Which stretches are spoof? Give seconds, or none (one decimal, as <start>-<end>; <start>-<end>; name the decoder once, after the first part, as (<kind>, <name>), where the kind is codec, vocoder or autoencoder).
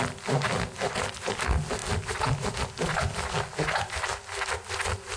none